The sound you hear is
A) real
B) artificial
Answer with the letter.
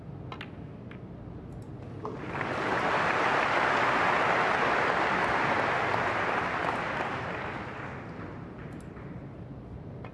A